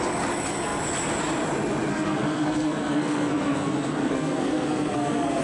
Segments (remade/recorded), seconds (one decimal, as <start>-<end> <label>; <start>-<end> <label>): 0.0-1.9 recorded; 1.9-5.4 remade